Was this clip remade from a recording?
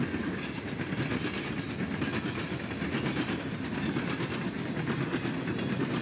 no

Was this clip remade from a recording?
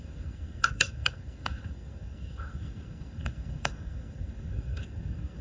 yes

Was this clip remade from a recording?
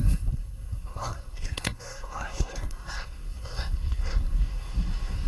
yes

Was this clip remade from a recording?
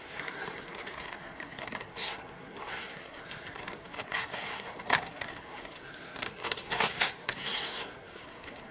yes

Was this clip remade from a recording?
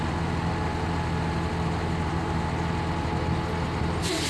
no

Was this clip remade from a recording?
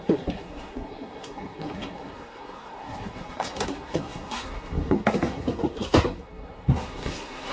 yes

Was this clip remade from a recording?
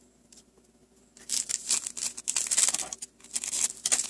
no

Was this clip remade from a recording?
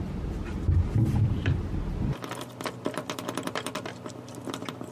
no